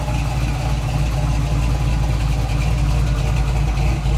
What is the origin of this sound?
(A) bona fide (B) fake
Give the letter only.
A